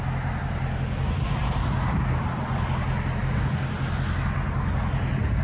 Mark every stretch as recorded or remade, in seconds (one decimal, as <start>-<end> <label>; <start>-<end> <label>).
0.0-5.4 recorded